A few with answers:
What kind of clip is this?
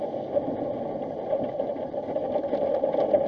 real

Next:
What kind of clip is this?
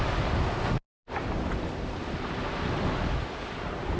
real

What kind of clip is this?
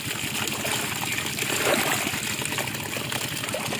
real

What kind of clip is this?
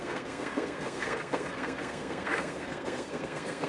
fake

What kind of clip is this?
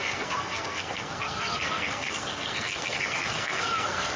fake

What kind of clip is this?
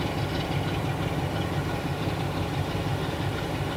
real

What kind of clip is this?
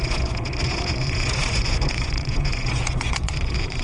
fake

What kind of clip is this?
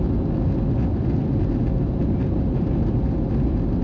real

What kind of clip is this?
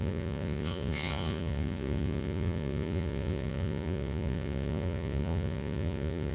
fake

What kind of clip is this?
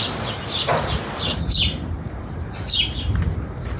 real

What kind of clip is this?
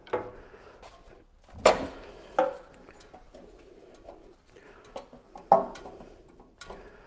real